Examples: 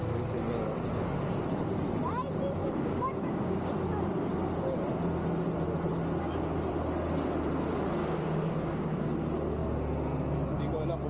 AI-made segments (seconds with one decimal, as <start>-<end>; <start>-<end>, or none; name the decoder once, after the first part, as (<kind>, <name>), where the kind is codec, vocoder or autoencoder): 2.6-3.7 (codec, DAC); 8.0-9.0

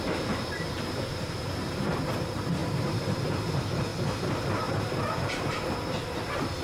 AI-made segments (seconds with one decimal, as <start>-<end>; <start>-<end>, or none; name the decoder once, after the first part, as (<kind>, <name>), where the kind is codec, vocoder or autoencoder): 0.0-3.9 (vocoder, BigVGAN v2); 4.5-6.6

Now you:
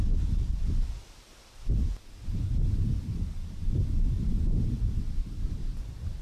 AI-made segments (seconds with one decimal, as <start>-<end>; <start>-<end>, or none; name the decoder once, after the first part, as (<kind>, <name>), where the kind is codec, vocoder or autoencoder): none